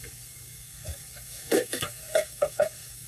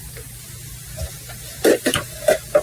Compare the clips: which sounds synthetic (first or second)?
first